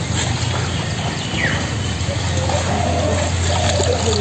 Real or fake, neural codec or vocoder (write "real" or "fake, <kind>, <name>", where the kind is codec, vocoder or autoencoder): real